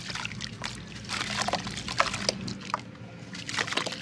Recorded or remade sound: recorded